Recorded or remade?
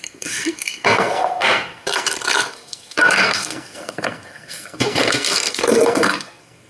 remade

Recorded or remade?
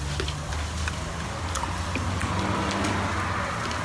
recorded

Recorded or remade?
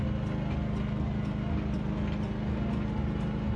recorded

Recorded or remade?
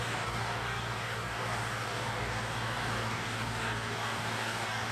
remade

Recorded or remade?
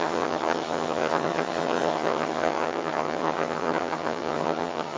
remade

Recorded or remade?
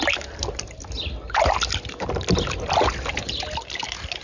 recorded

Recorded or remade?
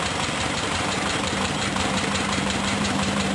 remade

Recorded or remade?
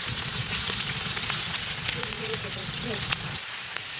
remade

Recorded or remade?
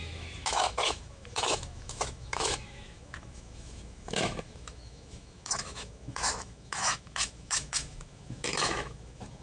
remade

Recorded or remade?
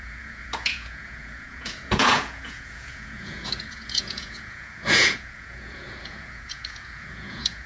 remade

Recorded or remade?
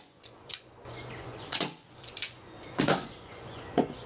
remade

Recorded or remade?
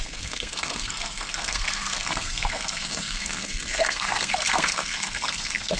remade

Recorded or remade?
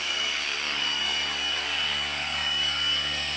remade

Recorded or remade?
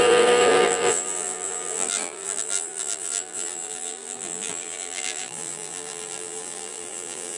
remade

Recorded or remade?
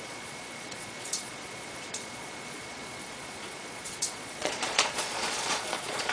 remade